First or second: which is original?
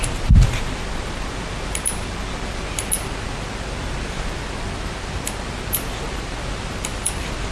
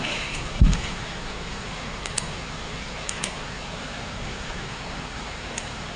first